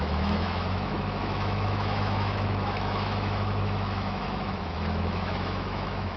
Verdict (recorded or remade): remade